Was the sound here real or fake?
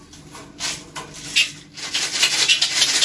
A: real